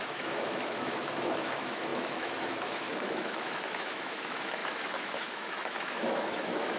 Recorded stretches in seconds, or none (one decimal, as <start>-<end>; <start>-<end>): none